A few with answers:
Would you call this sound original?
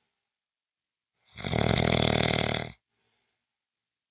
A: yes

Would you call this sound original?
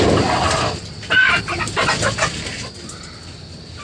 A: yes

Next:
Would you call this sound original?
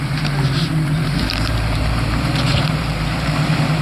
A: no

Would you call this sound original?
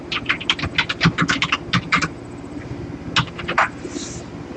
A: yes